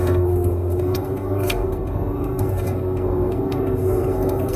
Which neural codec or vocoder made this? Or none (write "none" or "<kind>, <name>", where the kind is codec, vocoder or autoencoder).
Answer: codec, SNAC